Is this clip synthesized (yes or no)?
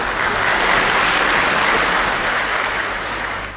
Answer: no